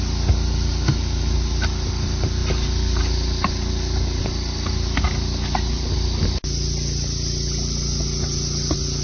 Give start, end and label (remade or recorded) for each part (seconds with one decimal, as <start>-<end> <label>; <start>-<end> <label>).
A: 0.0-9.0 recorded